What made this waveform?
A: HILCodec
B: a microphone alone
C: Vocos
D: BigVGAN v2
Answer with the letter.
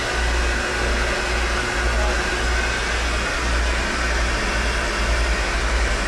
B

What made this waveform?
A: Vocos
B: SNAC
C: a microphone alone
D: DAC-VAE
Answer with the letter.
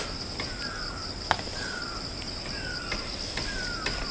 C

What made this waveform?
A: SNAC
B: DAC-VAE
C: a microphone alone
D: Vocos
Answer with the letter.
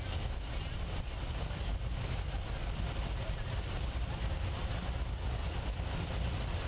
C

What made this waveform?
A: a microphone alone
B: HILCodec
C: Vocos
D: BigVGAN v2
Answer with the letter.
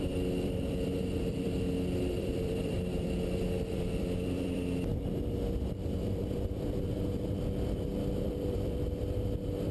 D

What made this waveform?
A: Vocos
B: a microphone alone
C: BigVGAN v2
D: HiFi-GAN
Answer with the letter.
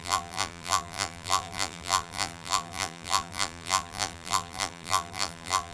C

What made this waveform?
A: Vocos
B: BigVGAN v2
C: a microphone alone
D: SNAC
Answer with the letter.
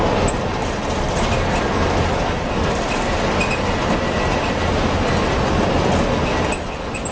C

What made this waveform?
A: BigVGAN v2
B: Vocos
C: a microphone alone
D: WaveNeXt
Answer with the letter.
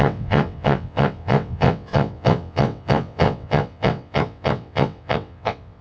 D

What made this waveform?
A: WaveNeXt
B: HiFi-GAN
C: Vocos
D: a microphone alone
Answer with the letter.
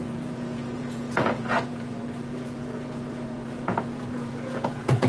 C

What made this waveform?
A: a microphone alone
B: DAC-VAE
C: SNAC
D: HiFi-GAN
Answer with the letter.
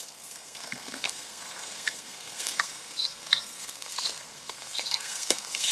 C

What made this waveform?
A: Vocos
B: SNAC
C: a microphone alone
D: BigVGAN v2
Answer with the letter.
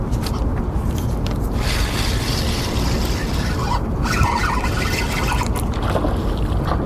C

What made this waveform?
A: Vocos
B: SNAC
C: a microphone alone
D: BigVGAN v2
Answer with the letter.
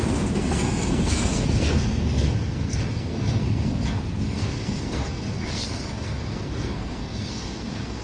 B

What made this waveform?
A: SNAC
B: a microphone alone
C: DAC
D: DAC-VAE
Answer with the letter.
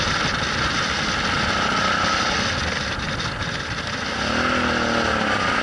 B